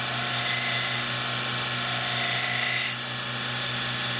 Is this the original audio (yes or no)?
yes